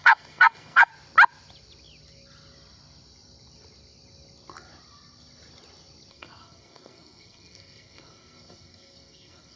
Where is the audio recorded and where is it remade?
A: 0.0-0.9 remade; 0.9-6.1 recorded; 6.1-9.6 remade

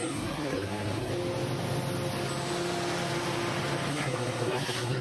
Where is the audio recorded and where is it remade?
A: 0.0-1.1 remade; 1.1-3.9 recorded; 3.9-5.0 remade

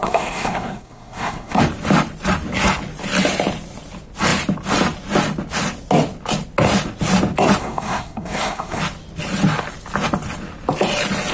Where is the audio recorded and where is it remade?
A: 0.0-1.6 remade; 1.6-7.6 recorded; 7.6-8.8 remade; 8.8-11.3 recorded

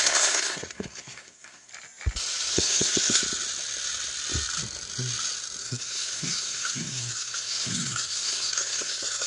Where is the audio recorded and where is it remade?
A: 0.0-1.7 remade; 1.7-2.5 recorded; 2.5-3.2 remade; 3.2-5.6 recorded; 5.6-9.3 remade

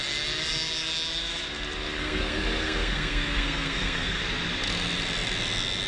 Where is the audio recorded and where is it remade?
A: 0.0-2.0 recorded; 2.0-4.2 remade; 4.2-5.9 recorded

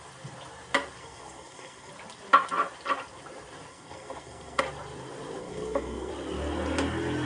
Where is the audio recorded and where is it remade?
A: 0.0-1.0 recorded; 1.0-1.9 remade; 1.9-3.7 recorded; 3.7-4.6 remade; 4.6-5.4 recorded; 5.4-6.1 remade; 6.1-7.3 recorded

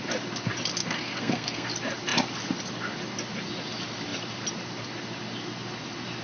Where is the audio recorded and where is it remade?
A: 0.0-0.8 recorded; 0.8-1.7 remade; 1.7-6.2 recorded